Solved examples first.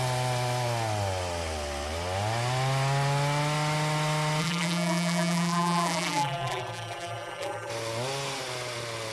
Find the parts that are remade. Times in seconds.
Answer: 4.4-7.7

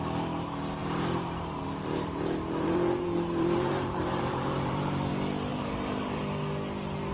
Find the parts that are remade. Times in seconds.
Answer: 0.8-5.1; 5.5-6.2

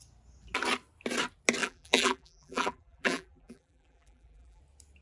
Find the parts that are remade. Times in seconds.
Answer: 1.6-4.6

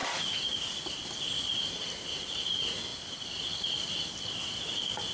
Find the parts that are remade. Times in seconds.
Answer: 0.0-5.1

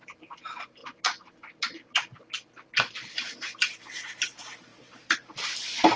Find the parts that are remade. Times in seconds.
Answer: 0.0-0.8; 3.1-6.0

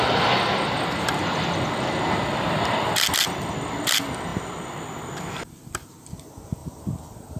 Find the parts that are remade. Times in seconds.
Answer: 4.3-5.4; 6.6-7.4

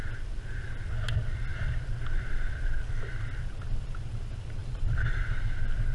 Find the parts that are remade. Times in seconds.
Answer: 4.6-5.2